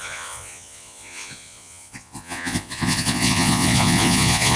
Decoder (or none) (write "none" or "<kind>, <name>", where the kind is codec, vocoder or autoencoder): vocoder, Vocos